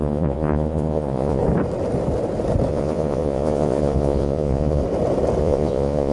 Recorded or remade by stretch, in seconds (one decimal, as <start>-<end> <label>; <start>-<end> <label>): 0.0-1.4 remade; 1.4-2.7 recorded; 2.7-4.8 remade; 4.8-5.4 recorded; 5.4-6.1 remade

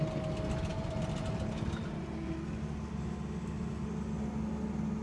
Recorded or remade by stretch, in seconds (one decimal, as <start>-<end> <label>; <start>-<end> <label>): 0.0-5.0 recorded

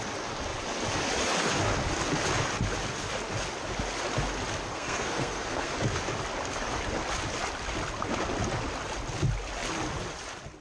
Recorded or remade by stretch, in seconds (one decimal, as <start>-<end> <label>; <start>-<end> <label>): 0.0-4.7 recorded; 4.7-5.7 remade; 5.7-10.6 recorded